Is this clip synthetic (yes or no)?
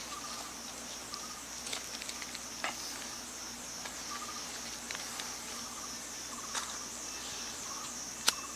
no